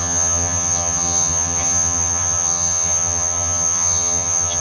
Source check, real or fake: fake